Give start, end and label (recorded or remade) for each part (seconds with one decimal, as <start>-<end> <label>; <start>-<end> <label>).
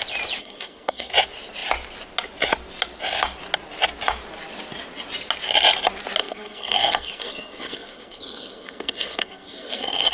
0.0-0.4 recorded; 0.4-1.1 remade; 1.1-6.2 recorded; 6.2-10.1 remade